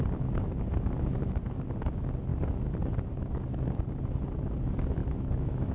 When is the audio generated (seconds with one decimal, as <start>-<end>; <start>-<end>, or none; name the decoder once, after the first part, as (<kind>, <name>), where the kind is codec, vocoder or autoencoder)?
5.0-5.7 (autoencoder, DAC-VAE)